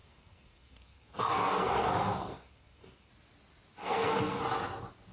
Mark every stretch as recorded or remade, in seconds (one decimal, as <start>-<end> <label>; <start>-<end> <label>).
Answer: 0.0-3.1 remade; 3.1-3.8 recorded; 3.8-4.4 remade; 4.4-5.1 recorded